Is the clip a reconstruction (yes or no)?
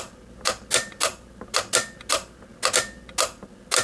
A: no